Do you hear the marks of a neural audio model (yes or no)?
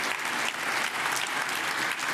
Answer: no